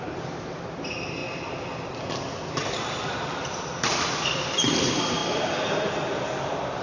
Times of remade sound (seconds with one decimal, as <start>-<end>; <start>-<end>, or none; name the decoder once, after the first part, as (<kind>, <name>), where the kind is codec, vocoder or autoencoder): 0.0-1.2 (vocoder, BigVGAN v2); 3.8-6.8